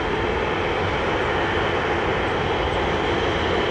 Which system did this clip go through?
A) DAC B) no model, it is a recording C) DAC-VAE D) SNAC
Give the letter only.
B